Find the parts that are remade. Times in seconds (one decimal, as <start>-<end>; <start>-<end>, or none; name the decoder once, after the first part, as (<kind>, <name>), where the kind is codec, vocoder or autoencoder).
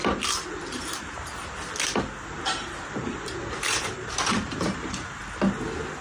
0.6-1.4 (vocoder, BigVGAN v2); 2.3-5.2